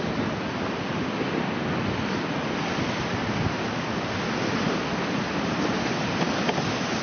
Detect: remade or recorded recorded